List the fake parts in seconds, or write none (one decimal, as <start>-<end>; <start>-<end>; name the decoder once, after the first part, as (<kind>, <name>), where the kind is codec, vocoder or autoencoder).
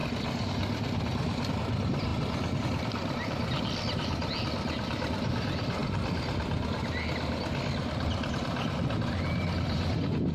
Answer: none